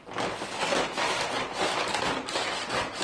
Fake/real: real